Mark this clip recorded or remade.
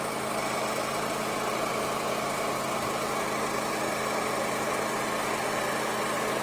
recorded